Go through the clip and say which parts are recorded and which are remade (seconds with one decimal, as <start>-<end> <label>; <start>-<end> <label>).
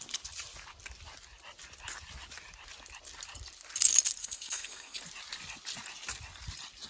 0.0-4.2 recorded; 4.2-5.0 remade; 5.0-6.9 recorded